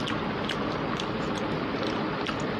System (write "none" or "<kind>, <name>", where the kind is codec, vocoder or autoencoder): none